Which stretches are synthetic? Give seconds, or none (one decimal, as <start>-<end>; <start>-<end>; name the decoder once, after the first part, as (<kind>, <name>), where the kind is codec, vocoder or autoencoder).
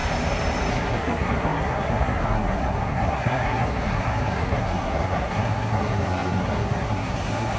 0.7-7.6 (codec, SNAC)